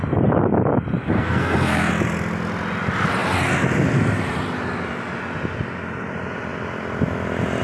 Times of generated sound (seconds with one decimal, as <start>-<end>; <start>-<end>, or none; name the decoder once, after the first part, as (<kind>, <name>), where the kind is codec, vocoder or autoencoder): 1.0-1.9 (codec, SNAC)